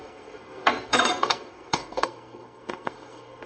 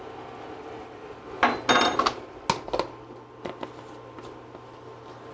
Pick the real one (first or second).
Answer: second